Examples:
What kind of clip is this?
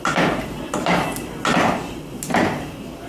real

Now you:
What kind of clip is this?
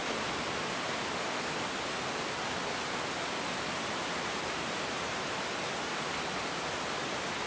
real